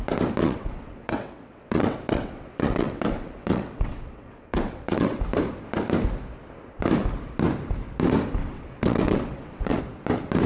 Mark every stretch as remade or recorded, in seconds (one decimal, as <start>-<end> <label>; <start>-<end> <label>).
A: 0.0-0.4 recorded; 0.4-5.2 remade; 5.2-8.4 recorded; 8.4-9.8 remade; 9.8-10.5 recorded